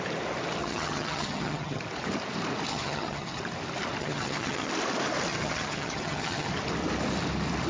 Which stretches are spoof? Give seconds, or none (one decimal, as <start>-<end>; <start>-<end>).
0.6-1.8; 2.7-3.4; 4.0-4.7; 5.3-6.5